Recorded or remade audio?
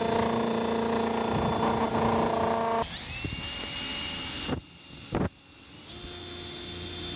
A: recorded